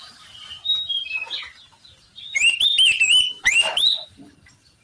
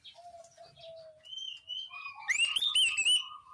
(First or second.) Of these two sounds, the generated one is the first